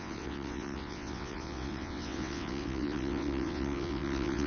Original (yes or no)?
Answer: no